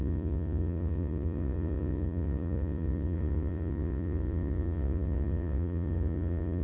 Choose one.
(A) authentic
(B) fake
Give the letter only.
B